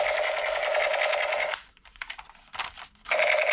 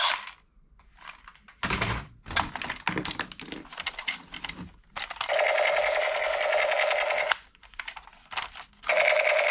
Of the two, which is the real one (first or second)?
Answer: second